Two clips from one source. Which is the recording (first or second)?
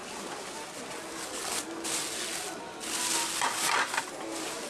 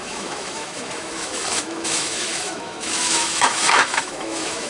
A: first